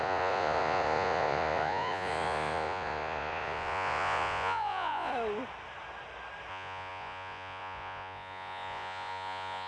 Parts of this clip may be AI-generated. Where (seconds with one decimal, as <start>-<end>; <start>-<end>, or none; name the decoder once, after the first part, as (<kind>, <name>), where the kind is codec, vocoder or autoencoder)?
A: 0.0-5.1 (vocoder, Vocos); 6.5-9.7